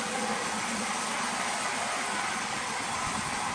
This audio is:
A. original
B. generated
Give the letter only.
A